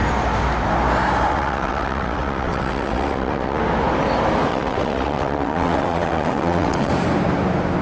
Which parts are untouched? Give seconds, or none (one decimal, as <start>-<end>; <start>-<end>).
0.0-1.3; 3.6-4.5; 6.9-7.8